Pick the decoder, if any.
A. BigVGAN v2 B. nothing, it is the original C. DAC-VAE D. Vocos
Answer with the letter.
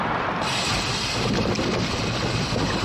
B